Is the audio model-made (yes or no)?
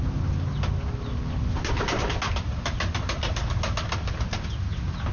no